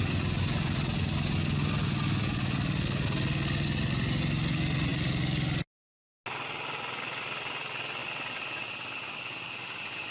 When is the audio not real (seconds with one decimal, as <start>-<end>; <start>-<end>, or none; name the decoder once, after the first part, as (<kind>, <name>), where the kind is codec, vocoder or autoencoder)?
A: none